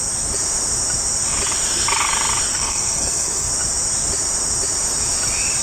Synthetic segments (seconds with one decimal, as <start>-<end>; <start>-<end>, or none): 2.5-3.5